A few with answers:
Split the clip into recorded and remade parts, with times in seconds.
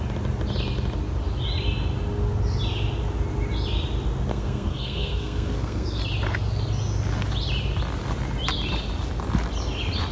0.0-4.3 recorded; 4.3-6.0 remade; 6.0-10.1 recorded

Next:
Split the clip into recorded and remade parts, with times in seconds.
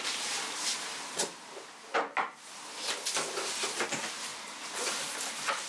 0.0-4.3 recorded; 4.3-5.1 remade; 5.1-5.7 recorded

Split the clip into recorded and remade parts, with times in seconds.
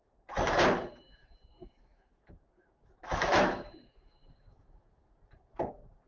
0.0-1.5 recorded; 1.5-5.2 remade; 5.2-6.1 recorded